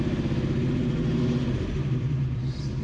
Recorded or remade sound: recorded